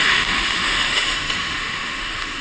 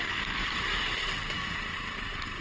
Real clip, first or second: second